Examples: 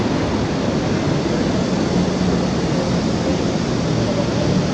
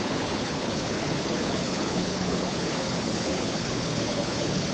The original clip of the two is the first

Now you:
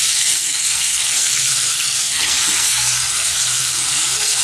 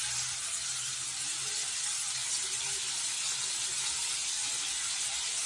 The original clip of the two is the second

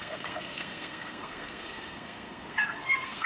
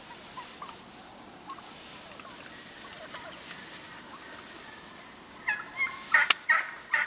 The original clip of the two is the second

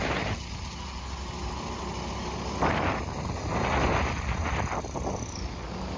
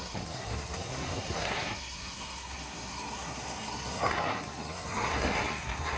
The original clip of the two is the first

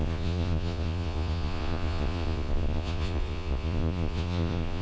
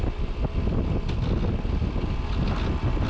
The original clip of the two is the second